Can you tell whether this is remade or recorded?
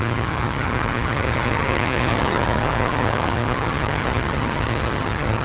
remade